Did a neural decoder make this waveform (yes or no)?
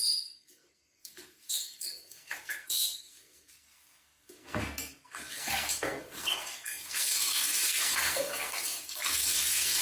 yes